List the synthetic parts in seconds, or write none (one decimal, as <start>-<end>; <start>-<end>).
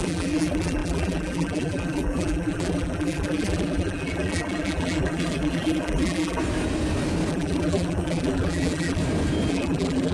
0.0-6.4; 7.3-9.0; 9.5-10.1